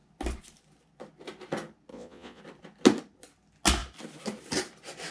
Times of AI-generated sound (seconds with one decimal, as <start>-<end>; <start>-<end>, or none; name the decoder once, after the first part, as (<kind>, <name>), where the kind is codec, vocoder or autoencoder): 1.9-2.4 (vocoder, Vocos)